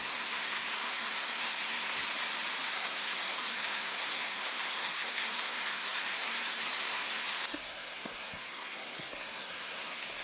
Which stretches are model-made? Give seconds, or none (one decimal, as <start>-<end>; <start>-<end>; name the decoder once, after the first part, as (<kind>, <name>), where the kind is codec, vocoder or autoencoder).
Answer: 0.0-2.0 (codec, SNAC); 2.7-10.2